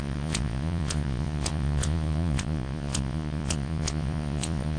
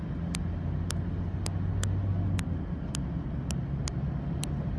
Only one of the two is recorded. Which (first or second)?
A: second